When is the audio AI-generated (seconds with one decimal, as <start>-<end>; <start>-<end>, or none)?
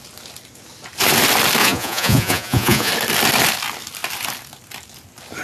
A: 1.6-2.9